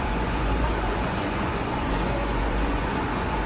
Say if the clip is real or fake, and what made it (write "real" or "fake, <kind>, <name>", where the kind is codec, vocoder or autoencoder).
fake, vocoder, Vocos